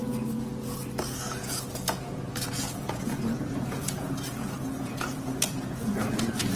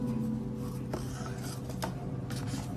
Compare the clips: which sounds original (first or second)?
second